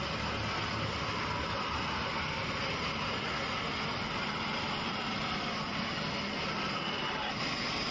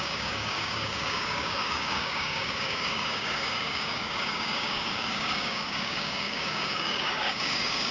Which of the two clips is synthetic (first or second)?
second